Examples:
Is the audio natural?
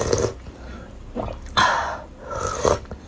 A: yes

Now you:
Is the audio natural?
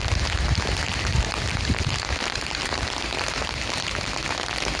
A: yes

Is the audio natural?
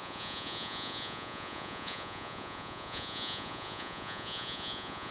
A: no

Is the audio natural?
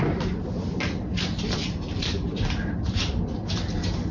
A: yes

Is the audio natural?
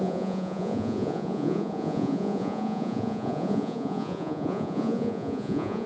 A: no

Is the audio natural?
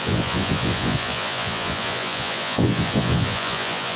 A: no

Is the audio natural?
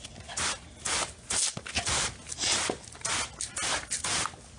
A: yes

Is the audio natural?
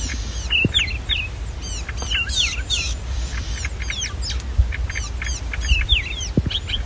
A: yes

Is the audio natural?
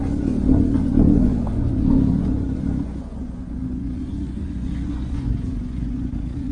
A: no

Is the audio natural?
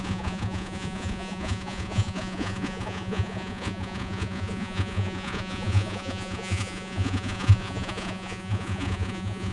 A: no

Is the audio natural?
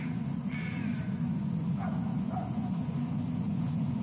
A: no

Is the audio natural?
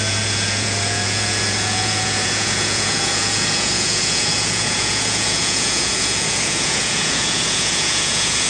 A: no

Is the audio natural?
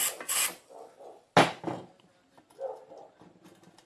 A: yes